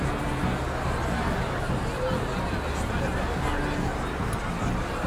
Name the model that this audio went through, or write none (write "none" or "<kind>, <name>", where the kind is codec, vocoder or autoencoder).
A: none